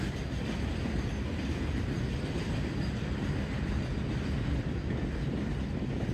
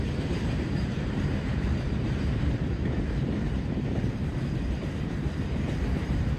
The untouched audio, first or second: first